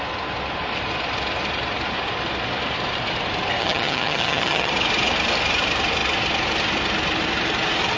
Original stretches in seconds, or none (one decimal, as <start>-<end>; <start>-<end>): 0.0-3.6; 4.7-8.0